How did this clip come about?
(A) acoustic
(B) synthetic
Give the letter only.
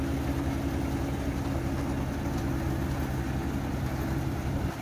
A